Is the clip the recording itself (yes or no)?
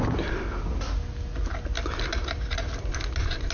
yes